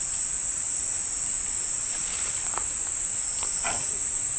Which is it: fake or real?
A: fake